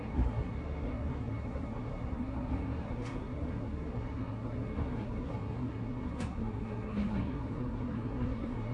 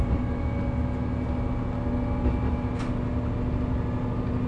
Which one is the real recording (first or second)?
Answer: second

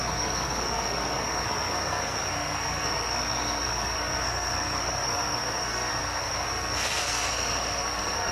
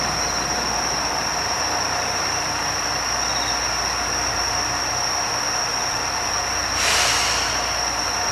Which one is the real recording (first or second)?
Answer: second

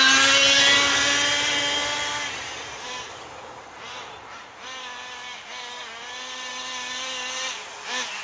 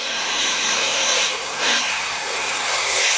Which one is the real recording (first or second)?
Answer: first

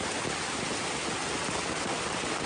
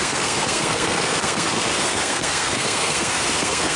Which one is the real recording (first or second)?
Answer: first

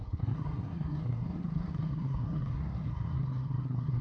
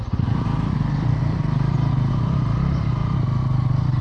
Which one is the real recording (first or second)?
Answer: second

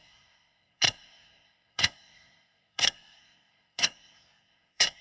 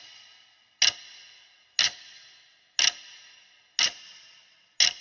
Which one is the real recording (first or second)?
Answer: second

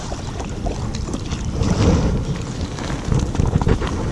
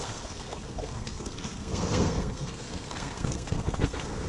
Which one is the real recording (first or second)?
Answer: first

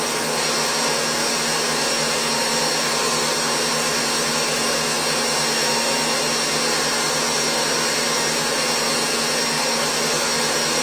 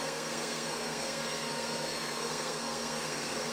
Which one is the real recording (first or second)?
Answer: first